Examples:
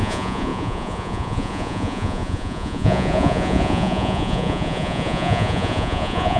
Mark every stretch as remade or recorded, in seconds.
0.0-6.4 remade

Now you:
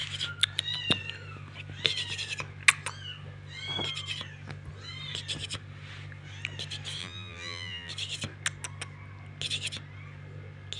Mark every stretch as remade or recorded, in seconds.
0.0-7.0 recorded; 7.0-7.9 remade; 7.9-10.8 recorded

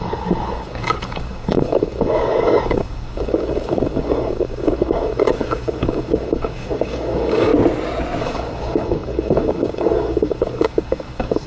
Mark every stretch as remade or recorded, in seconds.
0.0-7.5 remade; 7.5-8.2 recorded; 8.2-11.5 remade